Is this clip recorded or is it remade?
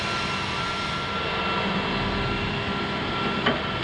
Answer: recorded